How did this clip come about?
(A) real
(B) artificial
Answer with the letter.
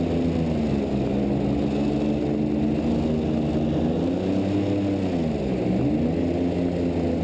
A